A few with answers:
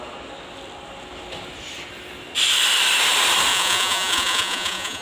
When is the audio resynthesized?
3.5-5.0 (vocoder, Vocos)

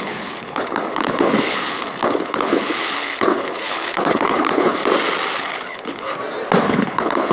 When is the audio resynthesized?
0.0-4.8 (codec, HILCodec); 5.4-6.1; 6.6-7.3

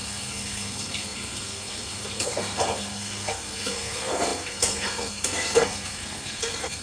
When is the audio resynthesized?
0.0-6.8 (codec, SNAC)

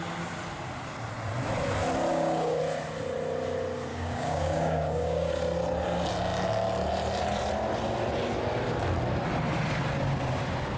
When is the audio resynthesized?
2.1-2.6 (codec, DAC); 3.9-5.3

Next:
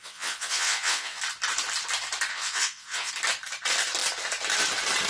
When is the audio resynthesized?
0.0-1.2 (vocoder, WaveNeXt); 2.3-3.1

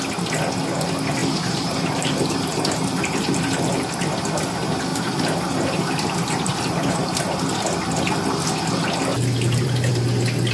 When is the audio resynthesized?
1.2-3.7 (vocoder, BigVGAN v2); 4.9-7.2; 9.1-9.9